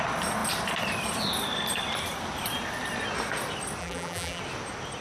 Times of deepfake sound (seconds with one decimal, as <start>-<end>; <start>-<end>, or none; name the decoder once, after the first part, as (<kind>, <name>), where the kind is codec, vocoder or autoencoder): 3.8-4.4 (vocoder, BigVGAN v2)

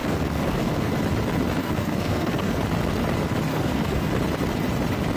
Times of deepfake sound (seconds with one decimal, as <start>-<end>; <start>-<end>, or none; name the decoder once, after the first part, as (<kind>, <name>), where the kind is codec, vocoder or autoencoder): 0.0-0.9 (codec, SNAC); 1.6-2.6; 3.5-4.1